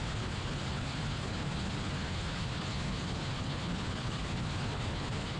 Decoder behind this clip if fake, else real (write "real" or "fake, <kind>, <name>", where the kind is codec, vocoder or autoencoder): fake, codec, HILCodec